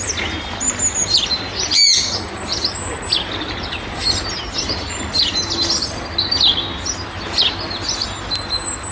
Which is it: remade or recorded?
recorded